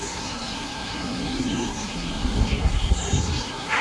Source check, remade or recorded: remade